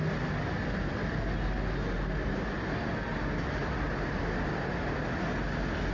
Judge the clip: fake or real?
real